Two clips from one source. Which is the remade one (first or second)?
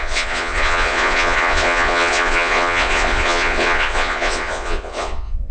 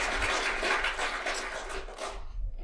first